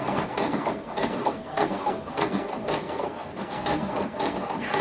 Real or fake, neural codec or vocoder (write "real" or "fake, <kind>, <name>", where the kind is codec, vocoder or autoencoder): fake, codec, SNAC